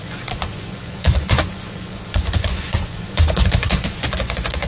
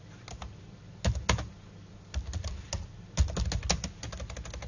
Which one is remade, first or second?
first